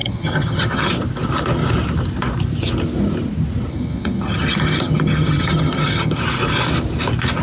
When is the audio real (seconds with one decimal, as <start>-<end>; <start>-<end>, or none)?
0.9-3.7; 6.2-7.4